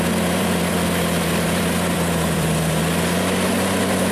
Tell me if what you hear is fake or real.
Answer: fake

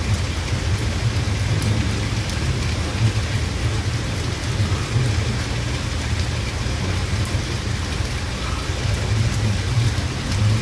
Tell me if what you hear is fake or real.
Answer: real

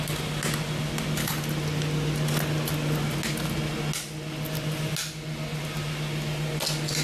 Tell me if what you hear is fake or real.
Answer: real